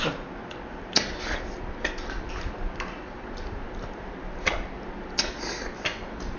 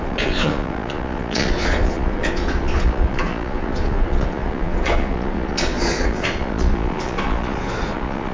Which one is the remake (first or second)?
second